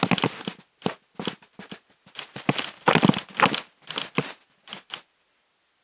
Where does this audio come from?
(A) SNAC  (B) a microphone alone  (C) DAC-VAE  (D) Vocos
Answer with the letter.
B